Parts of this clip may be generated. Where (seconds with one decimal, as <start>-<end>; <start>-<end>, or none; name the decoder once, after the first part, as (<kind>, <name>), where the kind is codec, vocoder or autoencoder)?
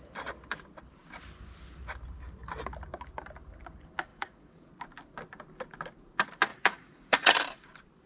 4.1-4.7 (vocoder, Vocos); 6.5-7.3